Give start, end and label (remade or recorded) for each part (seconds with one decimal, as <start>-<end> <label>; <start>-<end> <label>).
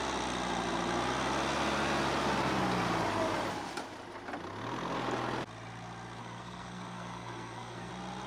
0.0-6.2 recorded; 6.2-7.9 remade; 7.9-8.3 recorded